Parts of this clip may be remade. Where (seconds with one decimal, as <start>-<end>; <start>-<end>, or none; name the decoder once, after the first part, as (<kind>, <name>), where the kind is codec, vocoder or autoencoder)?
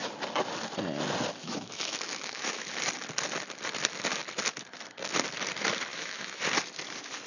1.4-2.8 (autoencoder, DAC-VAE); 5.9-6.4